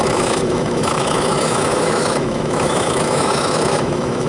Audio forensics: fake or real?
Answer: fake